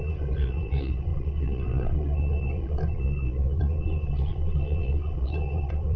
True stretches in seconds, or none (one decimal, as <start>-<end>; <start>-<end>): none